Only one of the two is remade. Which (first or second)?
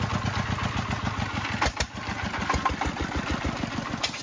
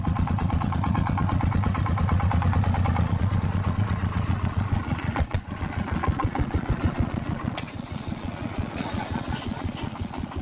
second